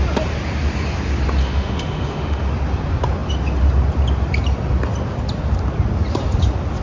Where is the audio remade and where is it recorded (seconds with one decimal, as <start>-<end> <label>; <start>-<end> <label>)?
0.0-1.4 recorded; 1.4-2.5 remade; 2.5-6.8 recorded